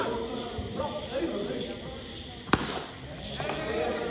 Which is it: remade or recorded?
recorded